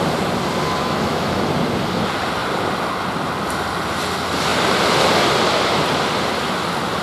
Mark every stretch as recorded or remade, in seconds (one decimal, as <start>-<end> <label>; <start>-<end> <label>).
0.0-0.8 recorded; 0.8-1.4 remade; 1.4-7.0 recorded